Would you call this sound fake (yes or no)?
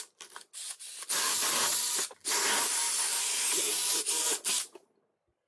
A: no